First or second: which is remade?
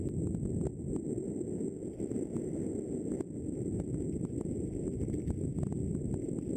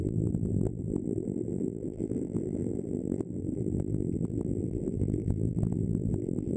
second